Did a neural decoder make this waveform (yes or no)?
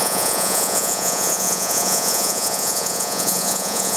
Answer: yes